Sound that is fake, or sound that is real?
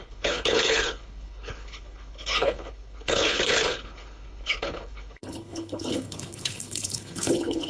fake